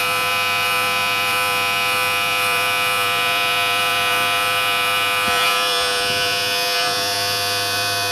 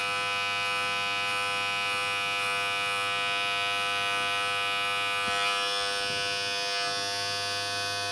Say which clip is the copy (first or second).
first